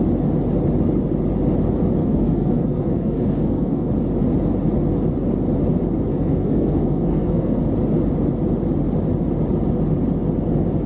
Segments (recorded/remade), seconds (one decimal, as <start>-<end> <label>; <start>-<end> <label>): 0.0-2.0 recorded; 2.0-3.9 remade; 3.9-6.1 recorded; 6.1-7.6 remade; 7.6-10.9 recorded